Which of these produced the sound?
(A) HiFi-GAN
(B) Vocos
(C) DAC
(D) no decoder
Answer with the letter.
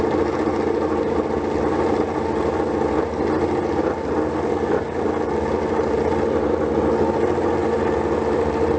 D